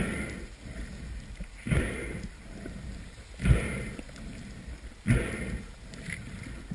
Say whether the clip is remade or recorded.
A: recorded